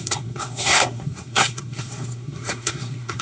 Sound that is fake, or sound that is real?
fake